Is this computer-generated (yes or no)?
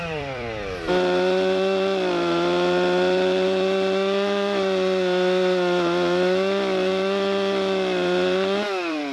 yes